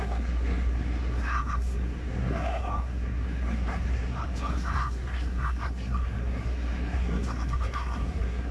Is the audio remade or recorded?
remade